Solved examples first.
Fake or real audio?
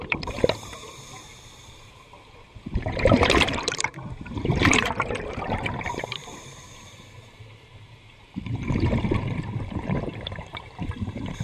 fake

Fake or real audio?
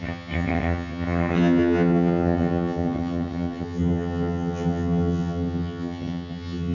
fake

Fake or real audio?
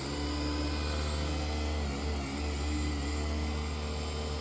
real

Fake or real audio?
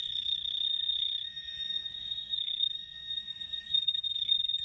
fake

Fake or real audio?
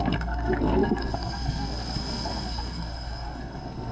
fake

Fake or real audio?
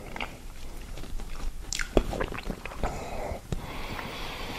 fake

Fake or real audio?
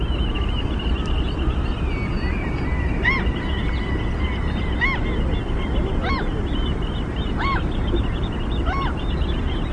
real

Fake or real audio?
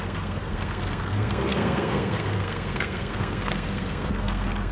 fake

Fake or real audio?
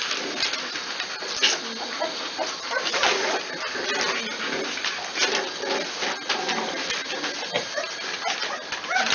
real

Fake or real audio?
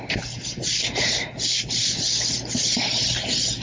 real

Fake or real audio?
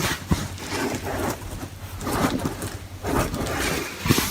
real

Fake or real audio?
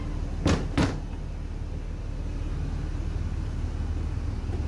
real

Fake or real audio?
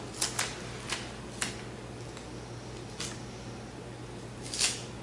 real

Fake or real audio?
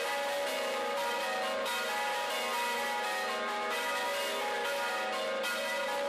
real